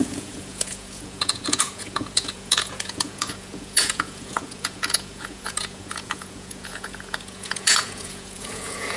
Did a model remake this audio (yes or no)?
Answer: yes